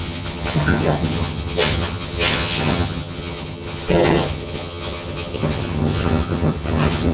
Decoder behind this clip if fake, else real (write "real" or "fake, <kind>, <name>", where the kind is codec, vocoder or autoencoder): fake, vocoder, HiFi-GAN